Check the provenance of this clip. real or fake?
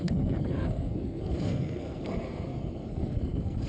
fake